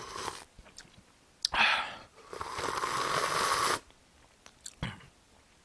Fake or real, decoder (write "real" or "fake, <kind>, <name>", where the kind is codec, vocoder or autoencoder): real